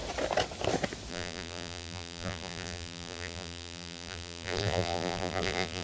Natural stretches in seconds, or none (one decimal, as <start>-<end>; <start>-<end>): 0.0-1.1